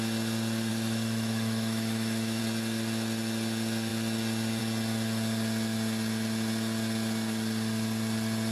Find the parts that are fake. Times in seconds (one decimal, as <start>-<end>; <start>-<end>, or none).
0.7-2.4